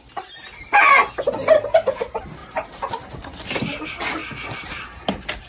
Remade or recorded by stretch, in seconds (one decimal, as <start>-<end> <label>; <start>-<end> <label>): 0.0-2.4 recorded; 2.4-2.9 remade; 2.9-4.2 recorded; 4.2-5.1 remade; 5.1-5.5 recorded